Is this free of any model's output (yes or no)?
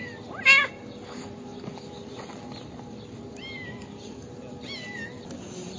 yes